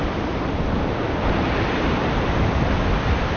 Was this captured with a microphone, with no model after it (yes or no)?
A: yes